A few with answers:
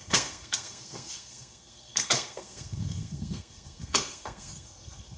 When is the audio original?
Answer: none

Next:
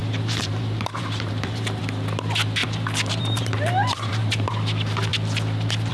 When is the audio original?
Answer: 1.8-2.6; 4.5-5.9

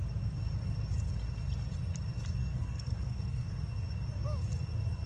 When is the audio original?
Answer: 0.0-2.4; 3.5-5.1

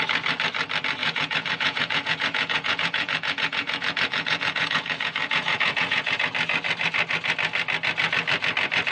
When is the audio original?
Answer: 0.0-1.0; 6.2-8.9